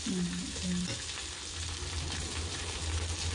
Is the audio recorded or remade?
recorded